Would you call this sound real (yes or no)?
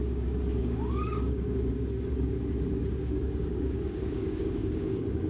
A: no